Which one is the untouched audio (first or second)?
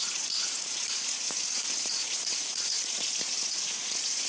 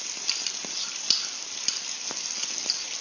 second